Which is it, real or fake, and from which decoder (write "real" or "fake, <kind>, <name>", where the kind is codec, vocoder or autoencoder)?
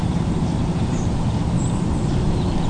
fake, vocoder, BigVGAN v2